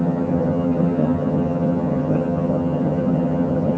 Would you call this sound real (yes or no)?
no